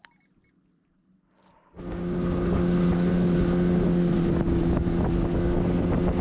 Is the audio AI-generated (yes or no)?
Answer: no